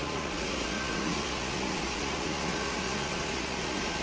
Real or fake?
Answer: fake